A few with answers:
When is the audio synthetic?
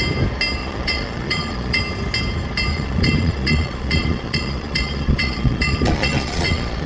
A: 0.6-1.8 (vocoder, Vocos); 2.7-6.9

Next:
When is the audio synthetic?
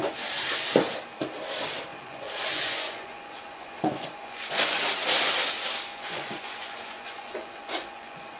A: 1.9-4.8 (vocoder, Vocos); 5.9-8.4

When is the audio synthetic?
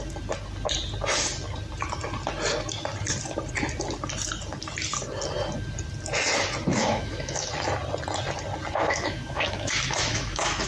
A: 6.7-7.5 (autoencoder, DAC-VAE); 8.8-10.7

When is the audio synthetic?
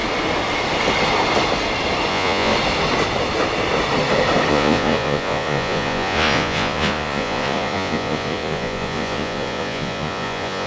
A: 2.1-2.5 (vocoder, Vocos); 4.5-10.7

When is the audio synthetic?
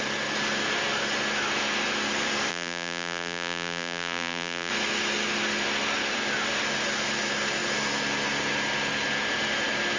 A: 2.5-4.7 (vocoder, BigVGAN v2)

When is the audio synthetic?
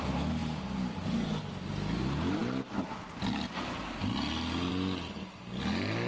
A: 0.4-1.3 (vocoder, BigVGAN v2)